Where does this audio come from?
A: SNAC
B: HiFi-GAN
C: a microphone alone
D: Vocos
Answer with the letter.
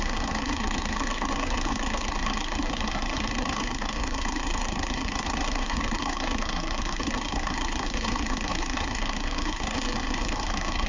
A